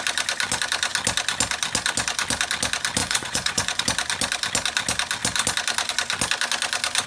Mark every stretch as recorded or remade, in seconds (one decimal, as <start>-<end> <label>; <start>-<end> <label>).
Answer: 0.0-3.0 recorded; 3.0-3.8 remade; 3.8-7.1 recorded